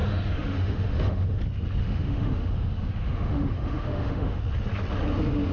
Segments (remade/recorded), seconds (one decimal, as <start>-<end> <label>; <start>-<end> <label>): 0.0-1.4 remade; 1.4-1.8 recorded; 1.8-4.4 remade; 4.4-5.5 recorded